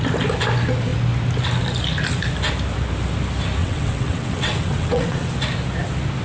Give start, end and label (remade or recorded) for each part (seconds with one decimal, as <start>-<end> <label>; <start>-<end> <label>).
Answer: 0.0-3.6 recorded; 3.6-5.3 remade; 5.3-6.2 recorded